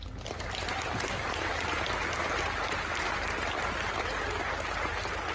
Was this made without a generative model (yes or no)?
yes